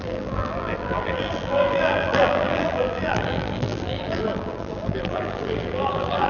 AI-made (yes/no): yes